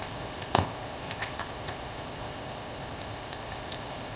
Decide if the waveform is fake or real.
fake